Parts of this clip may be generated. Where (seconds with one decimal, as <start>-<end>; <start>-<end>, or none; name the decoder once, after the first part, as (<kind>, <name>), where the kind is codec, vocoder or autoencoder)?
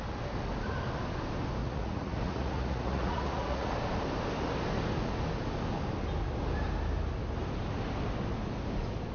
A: 1.6-3.7 (vocoder, Vocos)